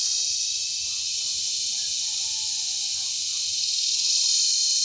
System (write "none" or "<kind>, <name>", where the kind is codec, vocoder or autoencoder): none